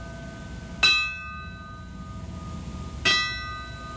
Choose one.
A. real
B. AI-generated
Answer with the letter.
A